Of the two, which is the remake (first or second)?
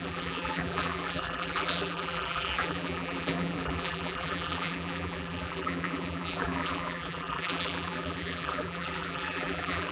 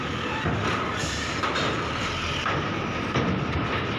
first